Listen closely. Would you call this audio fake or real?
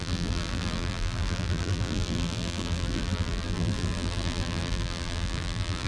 fake